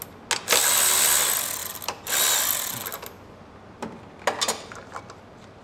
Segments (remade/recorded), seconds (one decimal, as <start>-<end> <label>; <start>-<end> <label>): 0.0-5.6 recorded